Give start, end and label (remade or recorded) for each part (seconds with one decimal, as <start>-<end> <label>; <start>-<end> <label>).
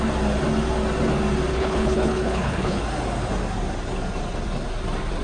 0.0-1.5 recorded; 1.5-2.8 remade; 2.8-5.2 recorded